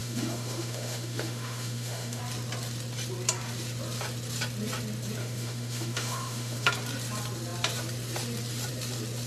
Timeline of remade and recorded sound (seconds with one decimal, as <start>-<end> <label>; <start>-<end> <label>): 0.0-2.2 remade; 2.2-5.2 recorded; 5.2-6.7 remade; 6.7-9.3 recorded